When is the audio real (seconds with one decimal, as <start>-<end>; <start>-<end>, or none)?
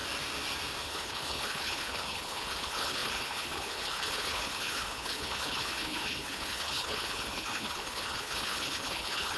0.0-0.8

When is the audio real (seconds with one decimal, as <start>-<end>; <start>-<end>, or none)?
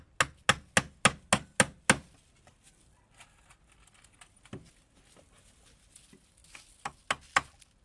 0.0-7.8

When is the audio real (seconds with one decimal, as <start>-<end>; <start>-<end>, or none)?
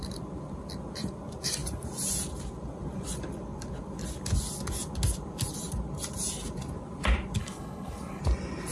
0.0-7.4; 8.2-8.7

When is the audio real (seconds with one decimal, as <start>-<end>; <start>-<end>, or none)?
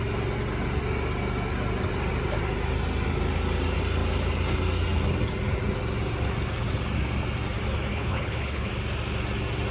0.0-7.9; 8.7-9.7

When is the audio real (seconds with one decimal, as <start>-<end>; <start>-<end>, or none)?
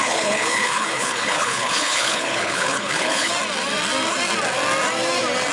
3.3-5.5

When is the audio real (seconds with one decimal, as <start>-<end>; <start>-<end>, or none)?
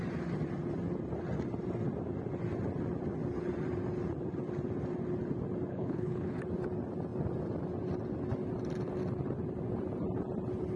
0.0-5.7; 6.4-10.8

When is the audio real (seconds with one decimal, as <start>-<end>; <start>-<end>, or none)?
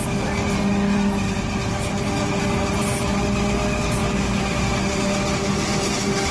0.0-6.3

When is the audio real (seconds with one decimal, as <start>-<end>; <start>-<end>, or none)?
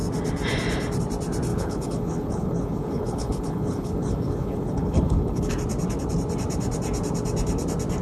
0.0-1.5; 5.5-8.0